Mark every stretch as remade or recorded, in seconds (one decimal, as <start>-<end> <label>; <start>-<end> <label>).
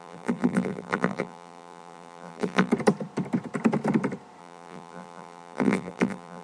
0.0-2.7 remade; 2.7-4.4 recorded; 4.4-6.4 remade